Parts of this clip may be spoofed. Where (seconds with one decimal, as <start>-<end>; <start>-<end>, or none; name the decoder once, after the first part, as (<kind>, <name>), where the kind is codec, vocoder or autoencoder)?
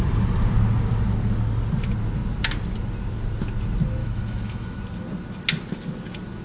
4.0-4.8 (autoencoder, DAC-VAE)